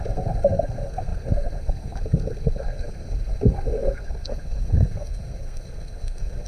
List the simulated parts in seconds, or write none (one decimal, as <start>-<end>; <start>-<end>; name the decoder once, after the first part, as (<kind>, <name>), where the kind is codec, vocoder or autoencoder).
0.0-6.5 (codec, SNAC)